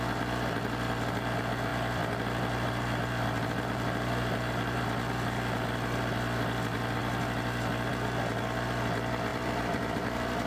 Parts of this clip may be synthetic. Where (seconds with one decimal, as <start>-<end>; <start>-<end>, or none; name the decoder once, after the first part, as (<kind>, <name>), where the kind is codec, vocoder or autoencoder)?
1.7-4.8 (vocoder, BigVGAN v2); 9.3-10.5

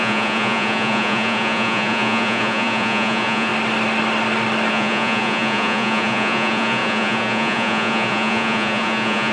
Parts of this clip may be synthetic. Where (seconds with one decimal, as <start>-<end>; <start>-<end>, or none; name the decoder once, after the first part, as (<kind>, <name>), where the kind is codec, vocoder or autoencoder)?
0.0-3.5 (vocoder, Vocos); 4.7-9.3

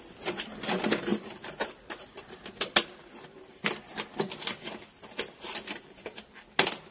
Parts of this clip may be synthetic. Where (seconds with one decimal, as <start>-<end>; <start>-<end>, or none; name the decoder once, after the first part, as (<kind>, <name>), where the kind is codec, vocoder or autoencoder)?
none